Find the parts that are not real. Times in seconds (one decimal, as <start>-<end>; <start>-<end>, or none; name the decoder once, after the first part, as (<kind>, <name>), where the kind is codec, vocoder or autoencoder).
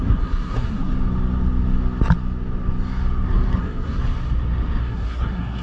0.0-0.9 (codec, SNAC); 3.6-4.0; 4.8-5.6